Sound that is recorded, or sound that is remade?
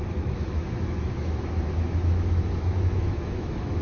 remade